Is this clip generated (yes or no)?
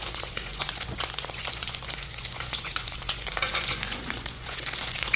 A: yes